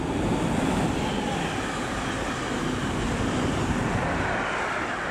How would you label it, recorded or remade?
recorded